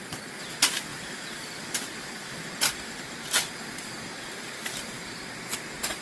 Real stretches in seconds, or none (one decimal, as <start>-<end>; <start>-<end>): 0.0-0.9; 3.0-4.5; 5.1-6.0